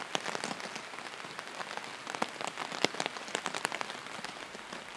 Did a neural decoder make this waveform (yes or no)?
no